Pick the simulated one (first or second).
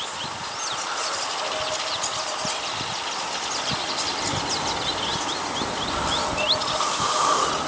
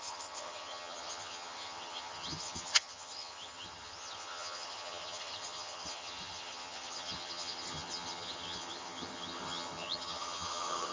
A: second